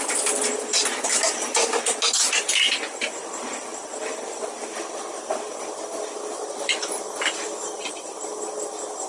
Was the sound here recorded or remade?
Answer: recorded